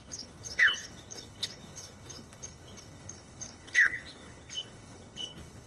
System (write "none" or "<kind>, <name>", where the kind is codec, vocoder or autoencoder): codec, HILCodec